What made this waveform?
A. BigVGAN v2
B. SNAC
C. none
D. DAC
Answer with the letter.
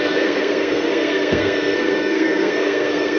B